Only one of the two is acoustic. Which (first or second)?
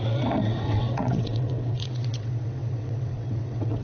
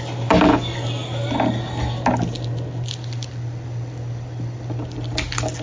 second